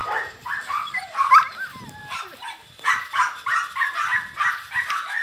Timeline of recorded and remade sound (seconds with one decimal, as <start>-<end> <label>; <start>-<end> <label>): 0.0-5.2 recorded